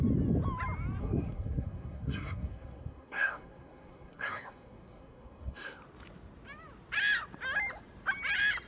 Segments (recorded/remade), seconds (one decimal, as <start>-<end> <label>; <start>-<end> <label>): 0.0-1.0 recorded; 1.0-5.8 remade; 5.8-8.7 recorded

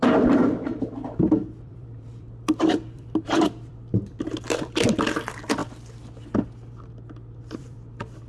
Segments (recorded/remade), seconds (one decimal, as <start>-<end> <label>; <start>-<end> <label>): 0.0-5.6 remade; 5.6-7.6 recorded; 7.6-8.3 remade

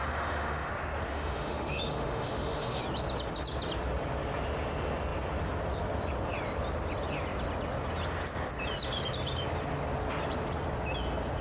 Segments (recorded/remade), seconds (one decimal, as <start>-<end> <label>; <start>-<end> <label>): 0.0-0.7 remade; 0.7-1.1 recorded; 1.1-2.8 remade; 2.8-11.4 recorded

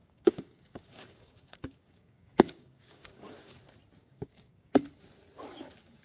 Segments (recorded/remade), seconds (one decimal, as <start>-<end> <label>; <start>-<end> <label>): 0.0-3.6 remade; 3.6-4.0 recorded; 4.0-4.8 remade; 4.8-6.0 recorded

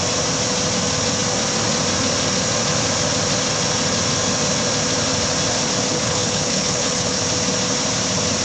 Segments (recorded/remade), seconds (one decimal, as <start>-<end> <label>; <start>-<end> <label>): 0.0-5.9 recorded; 5.9-7.2 remade; 7.2-8.4 recorded

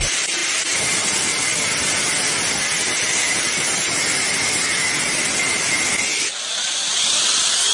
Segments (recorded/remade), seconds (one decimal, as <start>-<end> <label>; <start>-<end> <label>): 0.0-7.7 remade

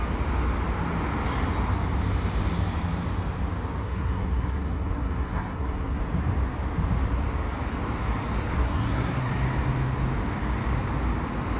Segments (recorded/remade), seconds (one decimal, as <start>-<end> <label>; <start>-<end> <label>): 0.0-3.8 recorded; 3.8-6.0 remade; 6.0-8.5 recorded; 8.5-9.3 remade; 9.3-11.6 recorded